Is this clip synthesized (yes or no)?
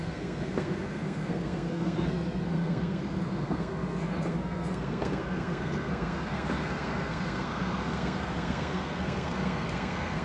yes